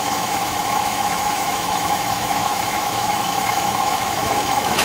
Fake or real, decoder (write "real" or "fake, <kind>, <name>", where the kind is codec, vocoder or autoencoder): fake, autoencoder, DAC-VAE